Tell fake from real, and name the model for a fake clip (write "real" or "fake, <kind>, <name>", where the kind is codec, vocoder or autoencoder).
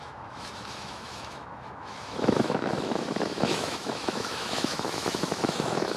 fake, autoencoder, DAC-VAE